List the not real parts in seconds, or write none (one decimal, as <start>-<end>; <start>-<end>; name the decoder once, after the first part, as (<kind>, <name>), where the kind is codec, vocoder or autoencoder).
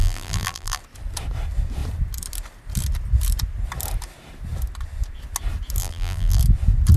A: 0.0-0.8 (vocoder, BigVGAN v2); 5.8-6.4